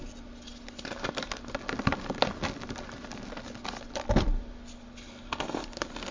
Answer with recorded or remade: recorded